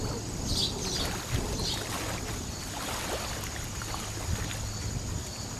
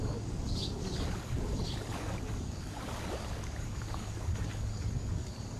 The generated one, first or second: second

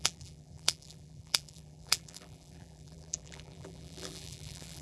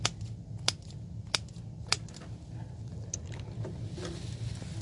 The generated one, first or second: first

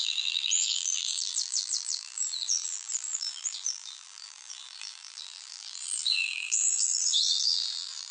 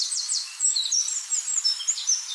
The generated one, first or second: first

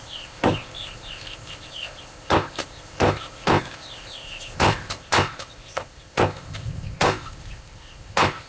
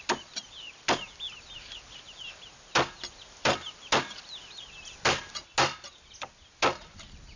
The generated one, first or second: first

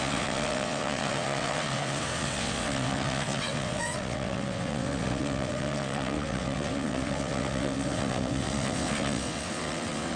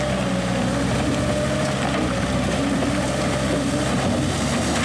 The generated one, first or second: first